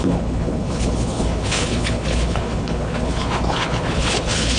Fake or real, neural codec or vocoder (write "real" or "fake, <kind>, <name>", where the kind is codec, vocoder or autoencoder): fake, codec, HILCodec